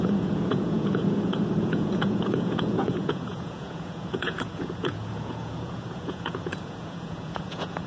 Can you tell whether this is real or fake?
fake